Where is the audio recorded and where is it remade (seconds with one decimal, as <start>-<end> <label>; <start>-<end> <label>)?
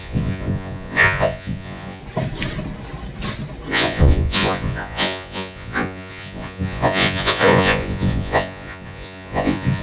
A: 0.0-2.0 remade; 2.0-3.7 recorded; 3.7-9.8 remade